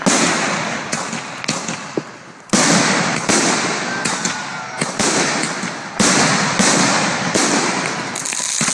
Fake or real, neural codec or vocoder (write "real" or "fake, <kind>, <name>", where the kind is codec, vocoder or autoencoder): real